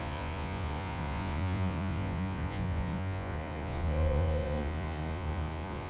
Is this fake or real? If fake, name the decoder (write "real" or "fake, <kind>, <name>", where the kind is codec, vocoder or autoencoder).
fake, vocoder, Vocos